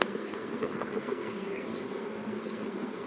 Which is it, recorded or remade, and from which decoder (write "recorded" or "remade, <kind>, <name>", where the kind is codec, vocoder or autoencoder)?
remade, codec, SNAC